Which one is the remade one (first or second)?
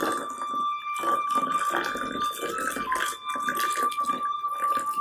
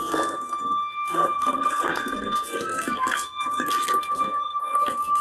second